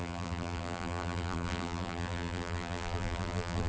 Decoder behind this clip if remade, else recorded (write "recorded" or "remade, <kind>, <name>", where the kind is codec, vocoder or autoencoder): remade, vocoder, BigVGAN v2